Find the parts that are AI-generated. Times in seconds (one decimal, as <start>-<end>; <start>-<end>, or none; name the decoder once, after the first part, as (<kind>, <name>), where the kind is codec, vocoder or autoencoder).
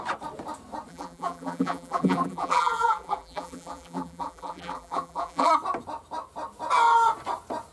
0.9-5.5 (vocoder, BigVGAN v2)